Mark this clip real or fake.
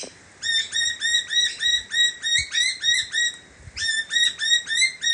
real